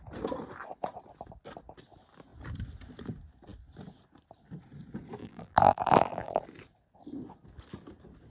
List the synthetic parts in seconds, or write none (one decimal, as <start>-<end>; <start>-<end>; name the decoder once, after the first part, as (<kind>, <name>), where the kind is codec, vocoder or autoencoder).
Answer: 5.2-6.4 (vocoder, BigVGAN v2)